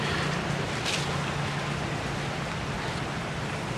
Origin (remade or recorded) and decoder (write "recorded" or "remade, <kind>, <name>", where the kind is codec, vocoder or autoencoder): recorded